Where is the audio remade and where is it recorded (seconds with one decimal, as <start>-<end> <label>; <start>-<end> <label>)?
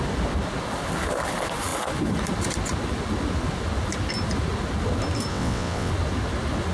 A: 0.0-5.3 recorded; 5.3-5.9 remade; 5.9-6.7 recorded